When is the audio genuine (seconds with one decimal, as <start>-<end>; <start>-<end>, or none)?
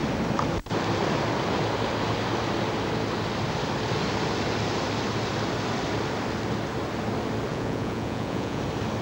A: 0.0-7.5; 8.6-9.0